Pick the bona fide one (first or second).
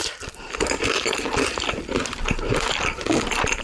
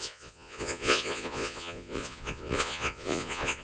first